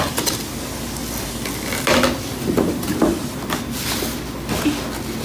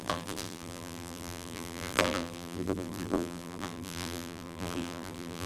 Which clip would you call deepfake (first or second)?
second